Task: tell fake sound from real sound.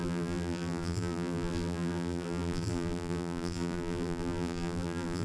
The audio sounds fake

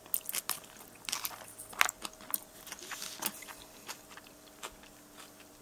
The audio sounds real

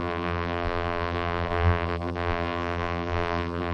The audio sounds fake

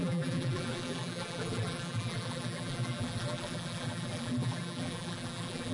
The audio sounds fake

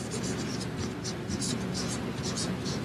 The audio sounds real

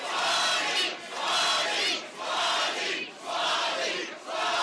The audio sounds real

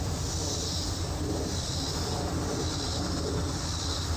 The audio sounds real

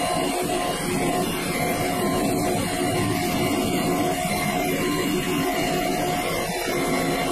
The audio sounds real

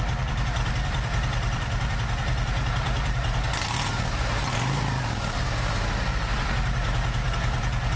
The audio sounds fake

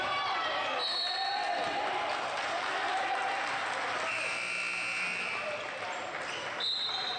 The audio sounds real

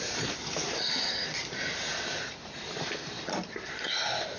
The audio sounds fake